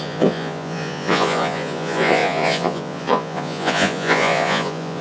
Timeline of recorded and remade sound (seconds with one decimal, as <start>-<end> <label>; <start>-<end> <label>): 0.0-5.0 remade